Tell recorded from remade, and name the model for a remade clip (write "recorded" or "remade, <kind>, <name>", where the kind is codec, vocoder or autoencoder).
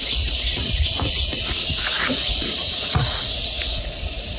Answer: remade, vocoder, Vocos